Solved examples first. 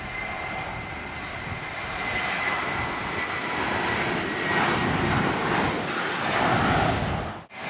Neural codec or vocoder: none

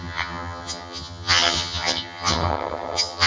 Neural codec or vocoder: vocoder, HiFi-GAN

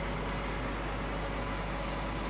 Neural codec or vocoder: none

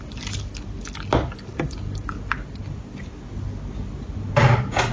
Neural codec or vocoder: none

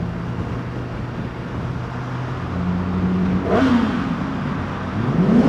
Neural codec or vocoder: none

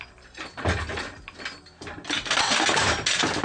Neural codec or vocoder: none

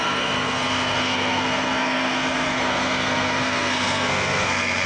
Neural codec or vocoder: codec, SNAC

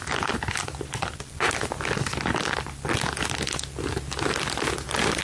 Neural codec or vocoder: none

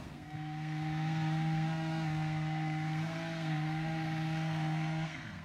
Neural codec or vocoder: codec, SNAC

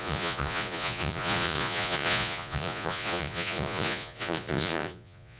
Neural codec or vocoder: vocoder, Vocos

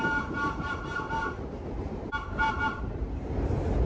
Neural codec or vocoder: vocoder, BigVGAN v2